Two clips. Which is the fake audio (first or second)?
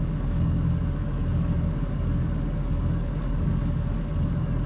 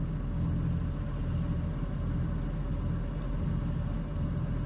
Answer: first